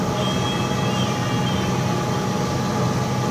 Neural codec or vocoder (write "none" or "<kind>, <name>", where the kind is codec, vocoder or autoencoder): none